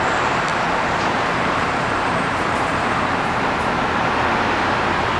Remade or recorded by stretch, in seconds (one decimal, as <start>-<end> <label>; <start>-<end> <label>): 0.0-0.5 recorded; 0.5-3.6 remade; 3.6-5.2 recorded